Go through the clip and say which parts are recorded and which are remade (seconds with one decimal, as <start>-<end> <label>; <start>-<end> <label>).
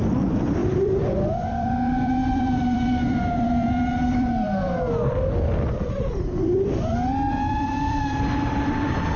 0.0-4.6 remade; 4.6-6.4 recorded; 6.4-9.2 remade